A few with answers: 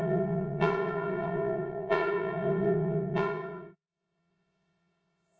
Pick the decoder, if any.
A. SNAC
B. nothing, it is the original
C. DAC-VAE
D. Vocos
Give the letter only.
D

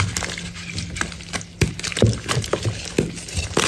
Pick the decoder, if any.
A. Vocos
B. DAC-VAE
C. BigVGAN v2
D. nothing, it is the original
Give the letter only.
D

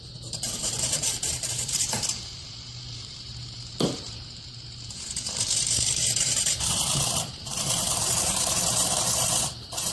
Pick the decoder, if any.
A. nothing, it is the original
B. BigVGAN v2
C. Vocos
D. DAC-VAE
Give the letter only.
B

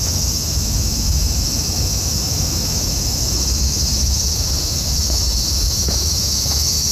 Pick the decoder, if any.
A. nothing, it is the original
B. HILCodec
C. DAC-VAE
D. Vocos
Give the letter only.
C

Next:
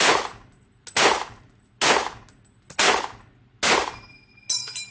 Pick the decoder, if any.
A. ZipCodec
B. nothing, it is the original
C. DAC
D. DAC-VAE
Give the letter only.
B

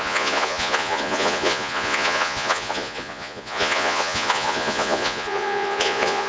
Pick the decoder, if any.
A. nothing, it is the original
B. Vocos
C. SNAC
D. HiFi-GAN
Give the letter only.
B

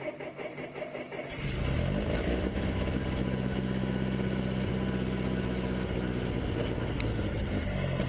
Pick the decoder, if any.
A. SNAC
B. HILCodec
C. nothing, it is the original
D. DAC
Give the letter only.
C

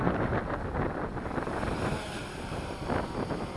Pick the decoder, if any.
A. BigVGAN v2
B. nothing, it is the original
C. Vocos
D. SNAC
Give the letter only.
B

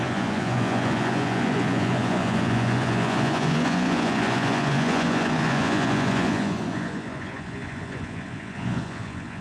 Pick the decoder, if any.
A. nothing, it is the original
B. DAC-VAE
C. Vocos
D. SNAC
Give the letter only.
C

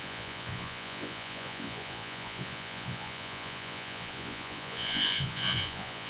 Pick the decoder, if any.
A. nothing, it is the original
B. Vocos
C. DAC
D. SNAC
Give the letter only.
B